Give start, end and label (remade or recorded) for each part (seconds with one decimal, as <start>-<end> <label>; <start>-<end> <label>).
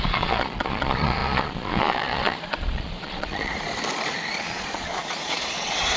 0.0-3.5 remade; 3.5-4.4 recorded; 4.4-6.0 remade